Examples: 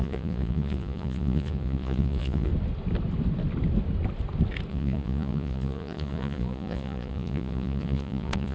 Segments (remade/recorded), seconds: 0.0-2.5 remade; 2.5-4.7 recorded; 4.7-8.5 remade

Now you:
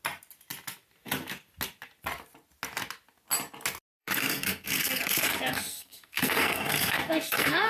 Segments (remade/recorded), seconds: 0.0-4.0 recorded; 4.0-7.7 remade